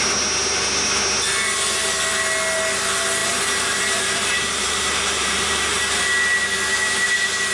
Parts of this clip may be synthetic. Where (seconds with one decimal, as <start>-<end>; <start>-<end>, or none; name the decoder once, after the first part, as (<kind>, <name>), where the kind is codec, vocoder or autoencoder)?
3.2-6.0 (vocoder, BigVGAN v2)